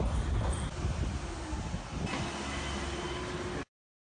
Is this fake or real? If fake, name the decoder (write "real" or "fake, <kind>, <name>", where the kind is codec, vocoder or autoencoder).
real